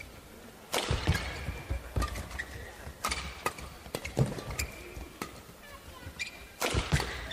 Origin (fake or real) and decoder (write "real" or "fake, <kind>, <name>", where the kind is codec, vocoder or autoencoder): real